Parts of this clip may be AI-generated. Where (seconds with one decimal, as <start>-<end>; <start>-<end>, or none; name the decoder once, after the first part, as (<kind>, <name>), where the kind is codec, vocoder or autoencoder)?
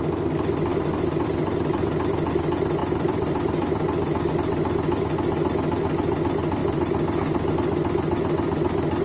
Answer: 0.7-2.3 (vocoder, BigVGAN v2); 2.8-4.3; 6.6-7.5